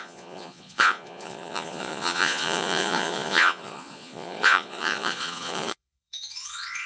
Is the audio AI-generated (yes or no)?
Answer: yes